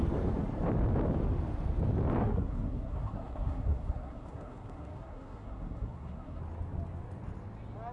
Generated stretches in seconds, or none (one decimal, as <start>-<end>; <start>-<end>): 2.2-6.4